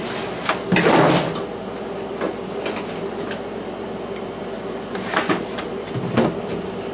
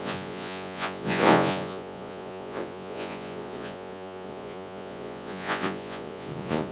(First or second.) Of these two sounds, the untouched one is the first